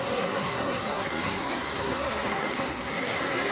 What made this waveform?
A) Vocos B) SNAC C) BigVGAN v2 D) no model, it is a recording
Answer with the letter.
B